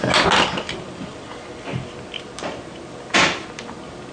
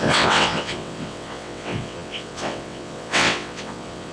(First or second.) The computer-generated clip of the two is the second